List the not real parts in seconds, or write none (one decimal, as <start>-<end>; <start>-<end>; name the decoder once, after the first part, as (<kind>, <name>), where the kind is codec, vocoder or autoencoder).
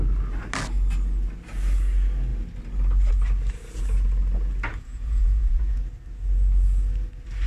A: 4.7-5.8 (vocoder, Vocos)